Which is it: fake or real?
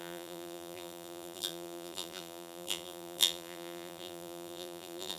fake